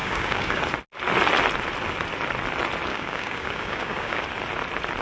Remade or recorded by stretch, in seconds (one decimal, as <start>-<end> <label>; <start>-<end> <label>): 0.0-0.6 remade; 0.6-2.9 recorded; 2.9-4.2 remade; 4.2-5.0 recorded